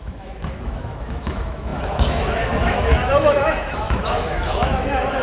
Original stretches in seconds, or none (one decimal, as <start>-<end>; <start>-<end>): none